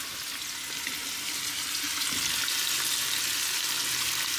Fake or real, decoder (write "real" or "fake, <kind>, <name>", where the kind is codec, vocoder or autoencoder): real